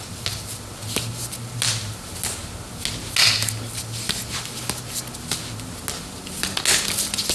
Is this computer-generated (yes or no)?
no